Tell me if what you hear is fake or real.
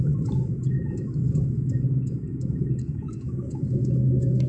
fake